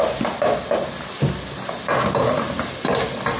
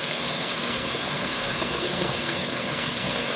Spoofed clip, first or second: second